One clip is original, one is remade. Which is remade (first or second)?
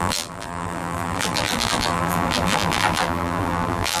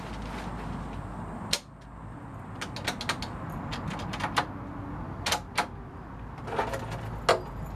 first